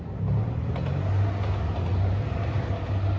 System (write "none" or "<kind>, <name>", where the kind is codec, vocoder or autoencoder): none